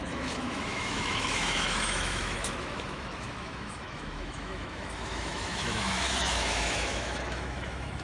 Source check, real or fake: fake